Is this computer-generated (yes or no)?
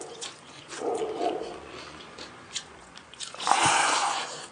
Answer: yes